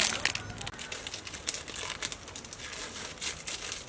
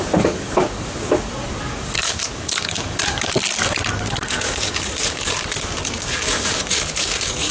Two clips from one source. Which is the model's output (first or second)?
second